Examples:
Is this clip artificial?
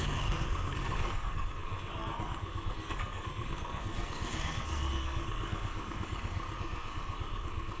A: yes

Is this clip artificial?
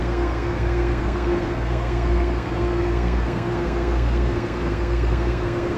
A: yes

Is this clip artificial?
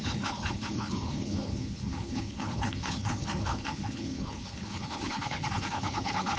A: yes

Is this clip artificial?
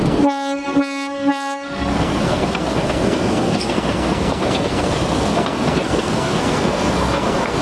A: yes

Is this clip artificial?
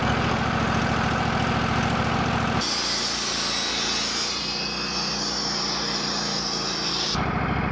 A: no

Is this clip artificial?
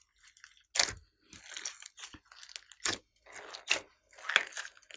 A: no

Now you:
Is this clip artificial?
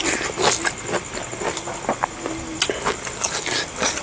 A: no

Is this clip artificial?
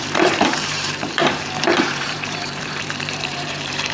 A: yes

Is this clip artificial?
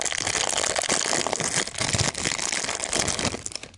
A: no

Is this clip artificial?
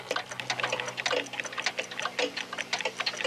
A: no